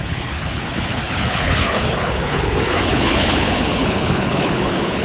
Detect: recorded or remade remade